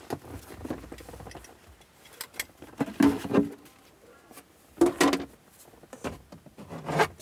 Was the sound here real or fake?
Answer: real